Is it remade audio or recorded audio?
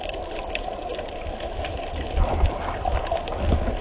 recorded